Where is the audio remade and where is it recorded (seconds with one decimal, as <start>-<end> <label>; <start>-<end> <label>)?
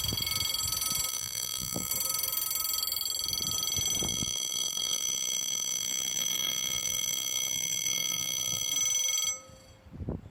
0.0-1.1 recorded; 1.1-1.9 remade; 1.9-4.1 recorded; 4.1-8.7 remade; 8.7-10.3 recorded